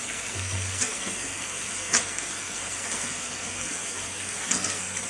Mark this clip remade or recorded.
remade